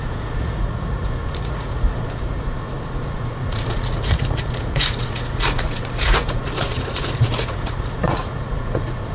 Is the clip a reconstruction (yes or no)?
yes